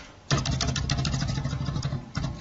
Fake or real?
real